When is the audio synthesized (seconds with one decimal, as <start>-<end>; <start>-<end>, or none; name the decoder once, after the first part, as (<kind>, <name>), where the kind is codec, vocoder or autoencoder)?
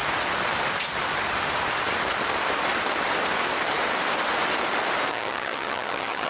5.1-6.3 (vocoder, HiFi-GAN)